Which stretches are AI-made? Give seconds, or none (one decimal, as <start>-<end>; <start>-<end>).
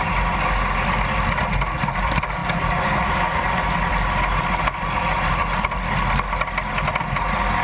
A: none